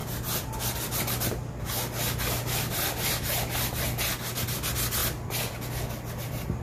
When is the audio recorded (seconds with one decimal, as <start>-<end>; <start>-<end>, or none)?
0.0-6.6